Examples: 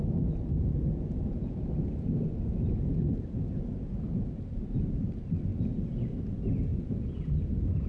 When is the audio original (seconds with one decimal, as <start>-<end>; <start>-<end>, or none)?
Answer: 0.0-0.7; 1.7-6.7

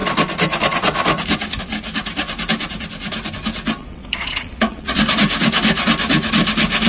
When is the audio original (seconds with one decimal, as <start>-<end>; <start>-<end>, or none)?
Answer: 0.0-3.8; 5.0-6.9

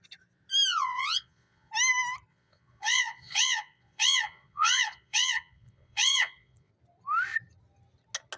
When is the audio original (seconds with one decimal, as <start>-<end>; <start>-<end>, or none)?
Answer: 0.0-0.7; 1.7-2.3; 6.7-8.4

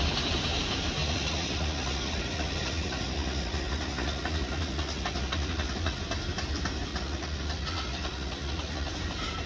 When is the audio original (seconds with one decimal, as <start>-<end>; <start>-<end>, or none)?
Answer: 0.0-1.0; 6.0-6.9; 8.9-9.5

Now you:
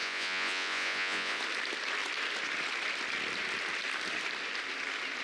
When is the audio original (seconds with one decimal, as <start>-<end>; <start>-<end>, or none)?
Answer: 1.4-5.2

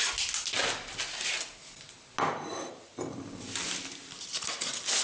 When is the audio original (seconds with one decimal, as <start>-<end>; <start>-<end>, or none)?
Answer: 0.0-5.0